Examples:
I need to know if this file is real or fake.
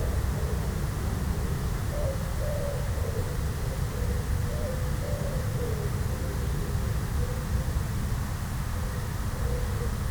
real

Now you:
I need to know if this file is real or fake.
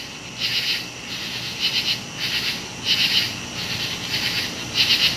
real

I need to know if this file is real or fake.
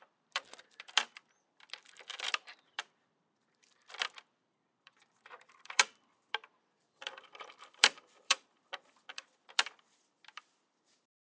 fake